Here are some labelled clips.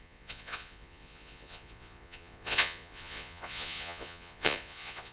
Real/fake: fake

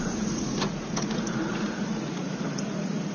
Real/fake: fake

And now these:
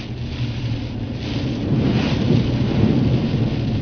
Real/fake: real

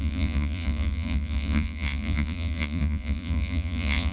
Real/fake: fake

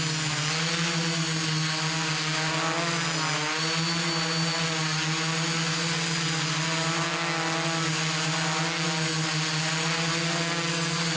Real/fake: real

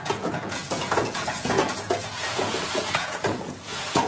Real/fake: fake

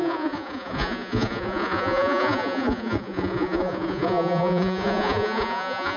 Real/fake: fake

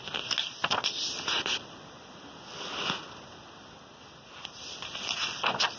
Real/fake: real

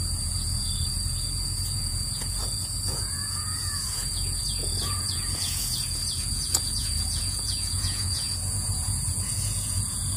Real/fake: fake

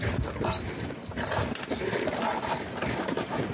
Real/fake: real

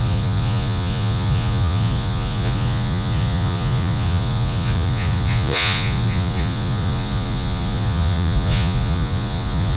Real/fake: fake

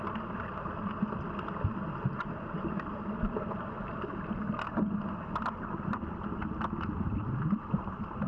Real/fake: real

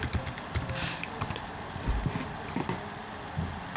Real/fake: real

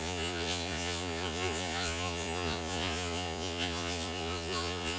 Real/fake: fake